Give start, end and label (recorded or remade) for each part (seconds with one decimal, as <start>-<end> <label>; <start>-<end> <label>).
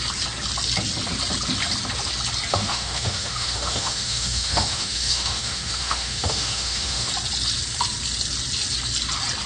0.0-2.5 recorded; 2.5-7.1 remade; 7.1-9.5 recorded